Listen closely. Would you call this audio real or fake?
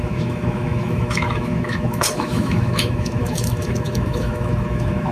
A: fake